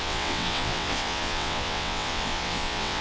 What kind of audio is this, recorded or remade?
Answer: remade